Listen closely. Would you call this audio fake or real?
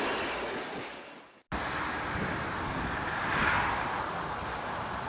real